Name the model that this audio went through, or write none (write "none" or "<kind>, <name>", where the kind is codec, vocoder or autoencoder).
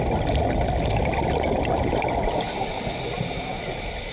none